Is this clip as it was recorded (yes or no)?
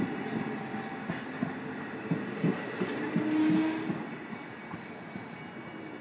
yes